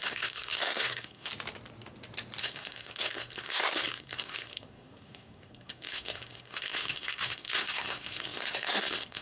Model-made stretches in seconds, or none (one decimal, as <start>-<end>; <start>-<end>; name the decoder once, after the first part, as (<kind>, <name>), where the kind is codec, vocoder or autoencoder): 0.0-1.3 (codec, SNAC); 2.4-9.2